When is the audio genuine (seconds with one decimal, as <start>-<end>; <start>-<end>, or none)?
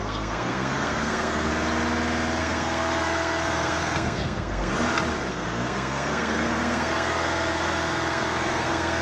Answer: 1.5-2.4; 4.7-5.3